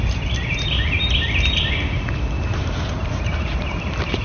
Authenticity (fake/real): fake